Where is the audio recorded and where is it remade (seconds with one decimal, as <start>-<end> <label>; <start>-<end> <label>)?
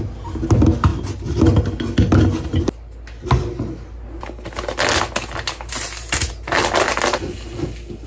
0.0-8.1 recorded